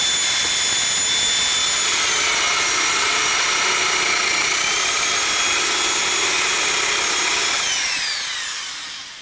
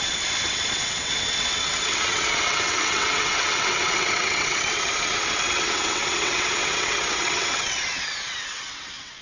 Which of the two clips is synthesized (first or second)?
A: second